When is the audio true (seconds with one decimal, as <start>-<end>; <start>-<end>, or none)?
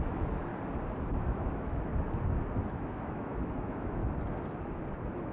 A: 0.5-1.1; 1.9-2.6; 4.0-5.3